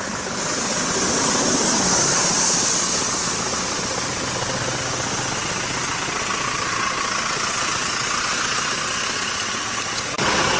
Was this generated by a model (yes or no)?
no